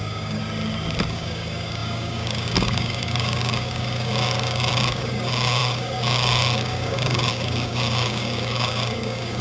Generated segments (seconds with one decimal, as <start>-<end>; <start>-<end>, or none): 0.0-0.4; 1.1-9.4